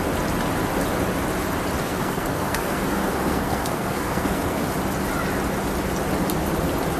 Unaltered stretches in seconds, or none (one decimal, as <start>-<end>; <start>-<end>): 0.0-1.8; 4.6-7.0